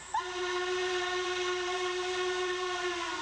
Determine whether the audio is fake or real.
fake